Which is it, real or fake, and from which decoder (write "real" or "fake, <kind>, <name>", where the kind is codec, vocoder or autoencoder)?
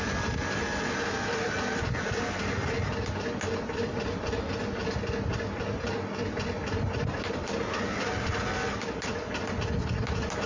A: real